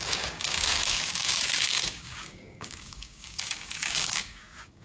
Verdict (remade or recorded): remade